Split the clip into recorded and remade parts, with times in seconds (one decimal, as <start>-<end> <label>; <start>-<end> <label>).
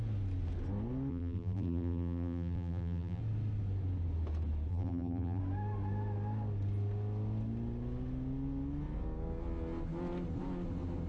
0.0-1.1 recorded; 1.1-3.2 remade; 3.2-4.7 recorded; 4.7-5.4 remade; 5.4-11.1 recorded